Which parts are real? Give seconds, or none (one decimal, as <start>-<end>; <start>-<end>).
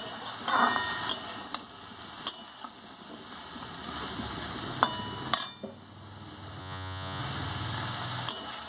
0.0-6.6; 7.2-8.7